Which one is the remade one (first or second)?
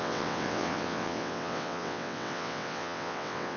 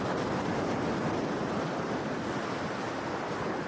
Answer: first